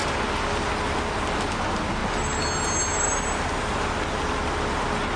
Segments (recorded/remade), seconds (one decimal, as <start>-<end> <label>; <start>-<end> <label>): 0.0-5.2 recorded